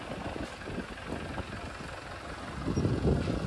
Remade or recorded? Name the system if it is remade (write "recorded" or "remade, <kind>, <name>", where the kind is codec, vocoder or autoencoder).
recorded